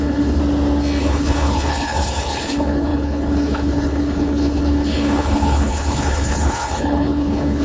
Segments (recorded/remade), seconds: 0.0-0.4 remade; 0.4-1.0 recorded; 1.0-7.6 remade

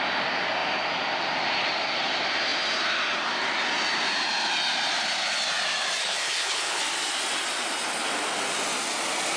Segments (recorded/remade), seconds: 0.0-6.0 recorded; 6.0-6.8 remade; 6.8-9.4 recorded

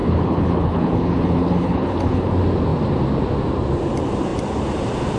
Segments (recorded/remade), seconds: 0.0-2.3 remade; 2.3-5.2 recorded

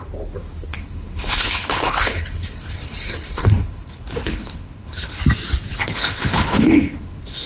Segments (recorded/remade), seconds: 0.0-0.7 recorded; 0.7-5.2 remade; 5.2-5.7 recorded; 5.7-7.5 remade